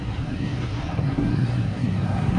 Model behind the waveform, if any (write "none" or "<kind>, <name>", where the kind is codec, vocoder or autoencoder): codec, SNAC